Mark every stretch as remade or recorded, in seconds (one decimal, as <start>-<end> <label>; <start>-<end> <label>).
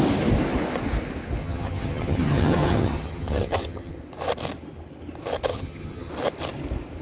0.0-1.4 recorded; 1.4-4.0 remade; 4.0-5.5 recorded; 5.5-6.1 remade; 6.1-7.0 recorded